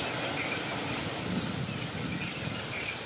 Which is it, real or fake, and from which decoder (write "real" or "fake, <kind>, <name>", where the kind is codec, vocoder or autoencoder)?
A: real